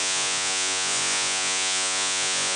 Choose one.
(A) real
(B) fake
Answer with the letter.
B